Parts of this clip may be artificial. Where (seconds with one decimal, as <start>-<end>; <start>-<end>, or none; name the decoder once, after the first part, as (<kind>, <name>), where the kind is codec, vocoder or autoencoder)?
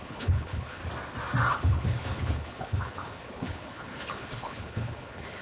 0.0-0.8 (codec, HILCodec); 1.5-5.4